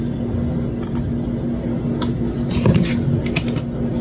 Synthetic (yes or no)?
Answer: no